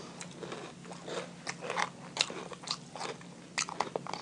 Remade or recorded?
recorded